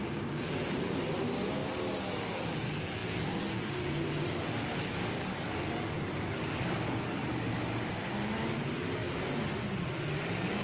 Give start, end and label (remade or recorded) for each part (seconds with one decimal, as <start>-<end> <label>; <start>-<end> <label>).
0.0-4.8 recorded; 4.8-7.7 remade; 7.7-10.6 recorded